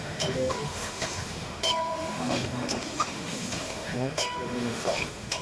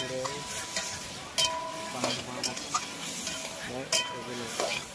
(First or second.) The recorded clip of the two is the second